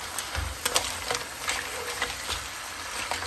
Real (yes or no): yes